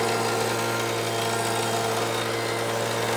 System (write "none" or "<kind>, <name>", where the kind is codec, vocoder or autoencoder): none